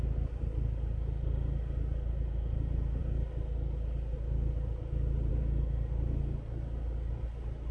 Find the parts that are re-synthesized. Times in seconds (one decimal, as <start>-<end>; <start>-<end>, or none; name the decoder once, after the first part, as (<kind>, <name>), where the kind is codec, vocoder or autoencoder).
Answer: none